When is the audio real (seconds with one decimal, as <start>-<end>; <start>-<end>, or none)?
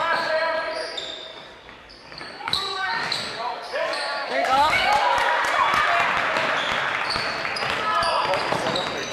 0.0-1.3; 4.9-9.1